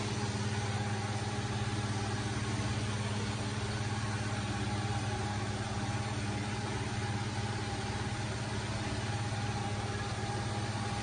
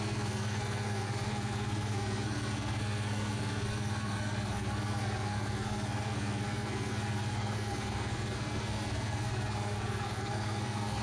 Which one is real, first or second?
first